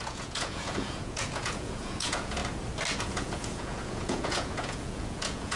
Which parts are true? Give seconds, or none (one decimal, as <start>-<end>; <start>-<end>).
2.4-3.0